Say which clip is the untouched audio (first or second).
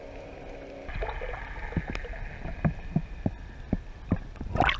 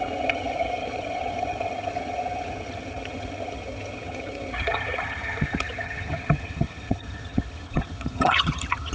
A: first